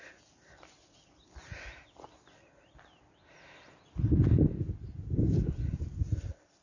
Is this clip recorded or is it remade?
recorded